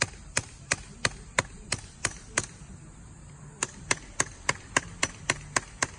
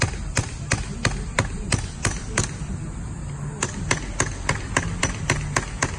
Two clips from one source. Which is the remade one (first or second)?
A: first